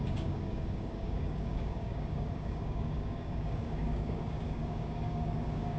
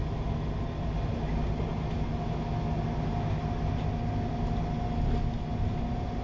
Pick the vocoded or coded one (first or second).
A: first